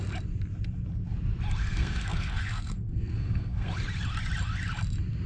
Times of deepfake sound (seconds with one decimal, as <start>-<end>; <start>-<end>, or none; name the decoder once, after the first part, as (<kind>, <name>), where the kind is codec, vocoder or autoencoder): 1.6-3.7 (codec, SNAC)